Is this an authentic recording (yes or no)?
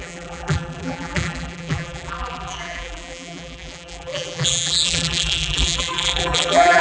no